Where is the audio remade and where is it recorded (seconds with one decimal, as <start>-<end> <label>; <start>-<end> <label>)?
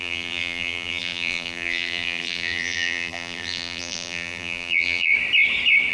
0.0-5.1 remade; 5.1-5.9 recorded